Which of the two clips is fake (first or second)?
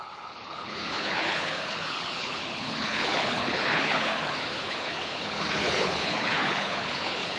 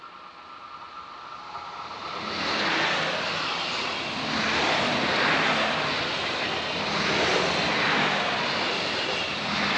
first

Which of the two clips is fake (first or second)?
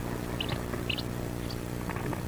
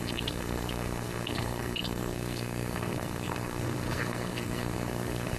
second